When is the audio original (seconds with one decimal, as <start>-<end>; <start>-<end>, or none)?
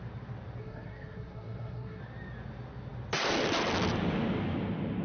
0.0-0.6; 2.0-5.0